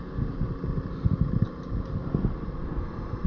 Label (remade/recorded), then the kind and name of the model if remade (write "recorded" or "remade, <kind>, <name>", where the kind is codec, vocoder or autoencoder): recorded